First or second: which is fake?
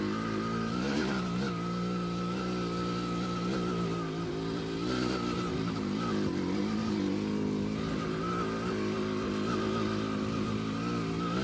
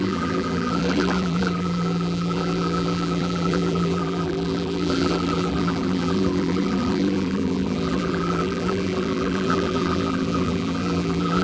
second